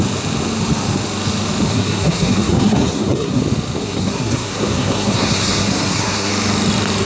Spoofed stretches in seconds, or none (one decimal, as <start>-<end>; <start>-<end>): 1.7-3.4; 3.8-6.3

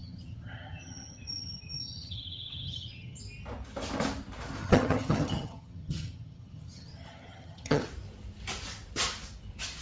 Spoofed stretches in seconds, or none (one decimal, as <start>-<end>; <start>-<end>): 0.0-3.2; 4.6-7.9